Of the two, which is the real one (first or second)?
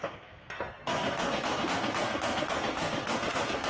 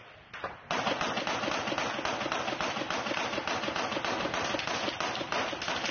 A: second